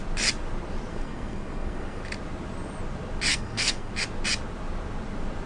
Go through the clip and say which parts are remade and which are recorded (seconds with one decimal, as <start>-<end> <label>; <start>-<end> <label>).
0.0-0.9 recorded; 0.9-2.0 remade; 2.0-3.3 recorded; 3.3-3.9 remade; 3.9-5.5 recorded